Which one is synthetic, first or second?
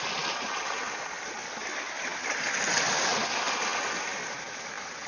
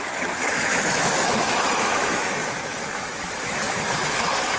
second